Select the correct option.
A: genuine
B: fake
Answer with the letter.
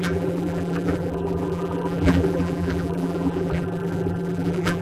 B